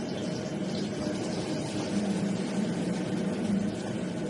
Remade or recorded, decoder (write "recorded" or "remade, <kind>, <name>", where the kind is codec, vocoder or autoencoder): remade, vocoder, BigVGAN v2